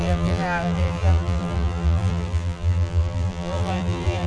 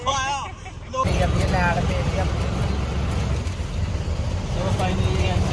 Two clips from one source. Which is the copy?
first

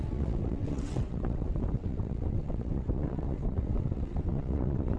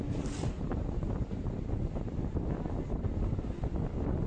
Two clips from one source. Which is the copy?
first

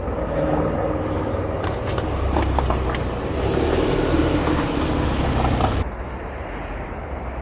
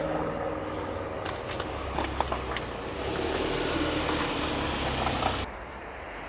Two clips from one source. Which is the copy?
first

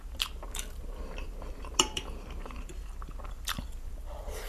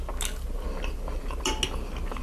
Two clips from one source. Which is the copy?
first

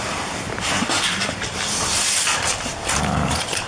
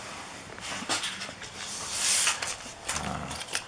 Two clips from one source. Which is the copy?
first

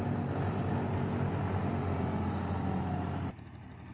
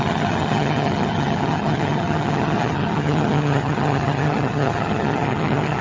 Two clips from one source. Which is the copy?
second